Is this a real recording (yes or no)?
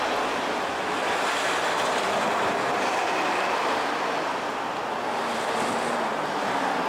yes